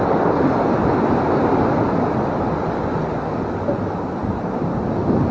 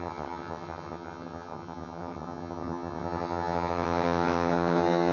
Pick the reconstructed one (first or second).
second